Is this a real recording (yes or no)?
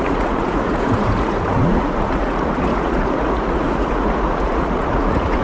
no